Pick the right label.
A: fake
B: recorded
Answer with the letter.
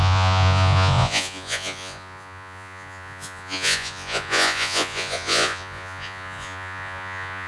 A